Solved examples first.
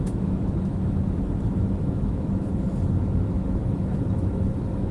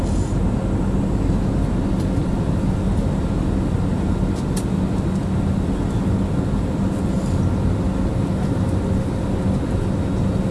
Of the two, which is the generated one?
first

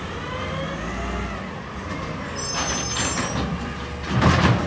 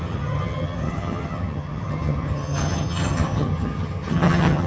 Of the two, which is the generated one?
second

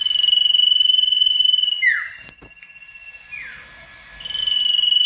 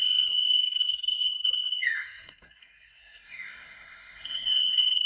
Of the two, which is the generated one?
second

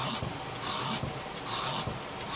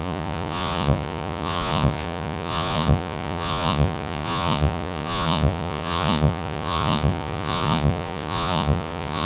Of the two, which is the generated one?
second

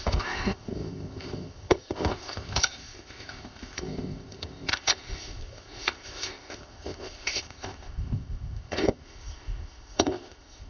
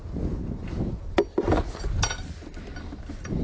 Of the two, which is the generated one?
first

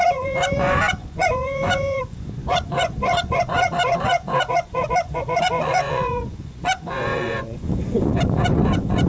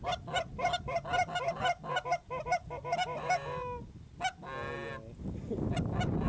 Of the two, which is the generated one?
first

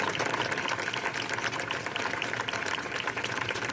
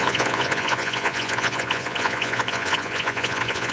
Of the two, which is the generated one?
second